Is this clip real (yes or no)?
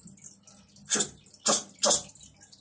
yes